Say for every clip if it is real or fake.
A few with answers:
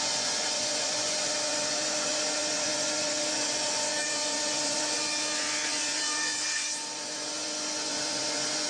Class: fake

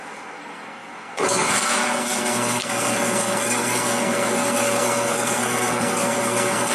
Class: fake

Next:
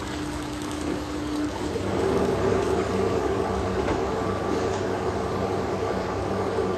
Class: fake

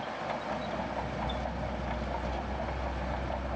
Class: real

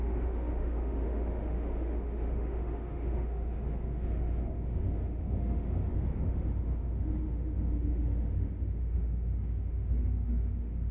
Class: fake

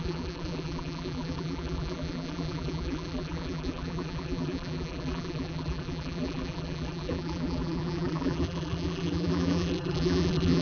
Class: fake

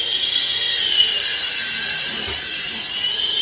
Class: fake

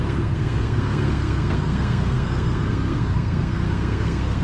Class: fake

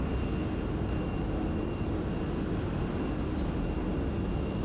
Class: real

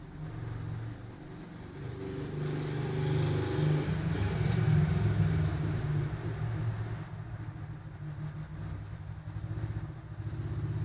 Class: real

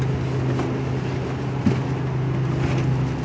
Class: real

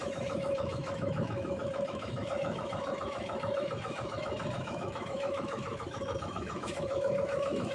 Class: fake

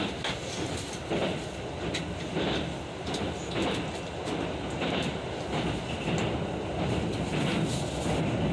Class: real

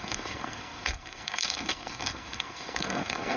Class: fake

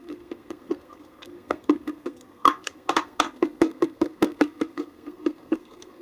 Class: fake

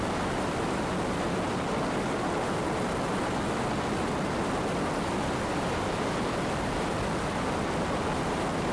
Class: real